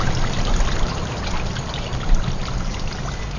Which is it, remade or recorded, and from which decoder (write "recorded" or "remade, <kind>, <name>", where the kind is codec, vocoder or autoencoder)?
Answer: recorded